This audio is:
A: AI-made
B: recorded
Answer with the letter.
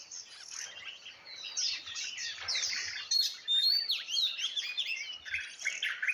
B